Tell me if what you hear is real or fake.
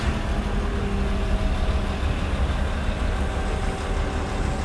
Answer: real